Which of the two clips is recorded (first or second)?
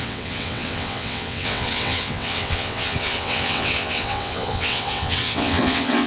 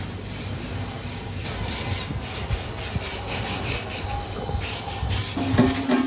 second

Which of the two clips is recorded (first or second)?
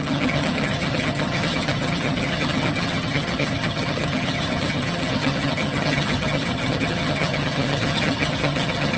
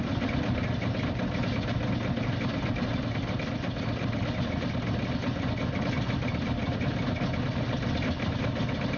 second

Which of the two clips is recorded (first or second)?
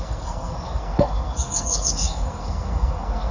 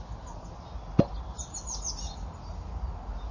second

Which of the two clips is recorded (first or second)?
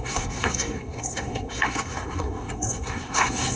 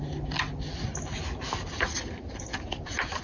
second